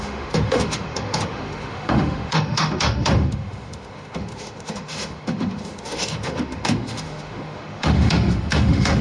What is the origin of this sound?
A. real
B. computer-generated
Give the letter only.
B